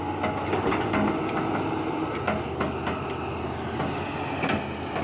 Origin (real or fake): real